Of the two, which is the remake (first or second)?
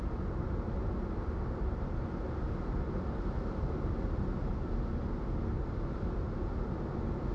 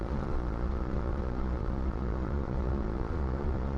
second